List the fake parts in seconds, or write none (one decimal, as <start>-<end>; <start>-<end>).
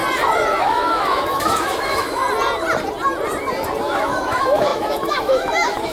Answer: 0.6-2.2; 3.8-5.9